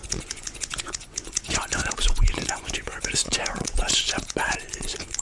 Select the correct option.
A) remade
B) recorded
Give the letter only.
A